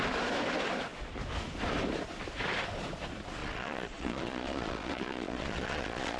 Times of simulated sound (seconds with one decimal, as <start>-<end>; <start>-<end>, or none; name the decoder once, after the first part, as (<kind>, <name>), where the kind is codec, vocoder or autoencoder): 3.4-6.2 (vocoder, Vocos)